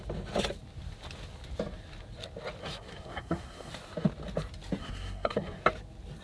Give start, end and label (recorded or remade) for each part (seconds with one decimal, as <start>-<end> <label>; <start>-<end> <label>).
0.0-2.6 recorded; 2.6-3.7 remade; 3.7-4.8 recorded; 4.8-5.6 remade; 5.6-6.2 recorded